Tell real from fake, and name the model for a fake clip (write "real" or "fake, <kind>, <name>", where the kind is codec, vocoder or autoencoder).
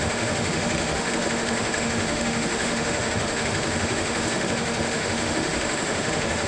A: fake, autoencoder, DAC-VAE